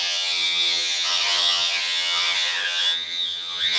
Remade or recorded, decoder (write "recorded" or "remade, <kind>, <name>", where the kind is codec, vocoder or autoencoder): remade, vocoder, HiFi-GAN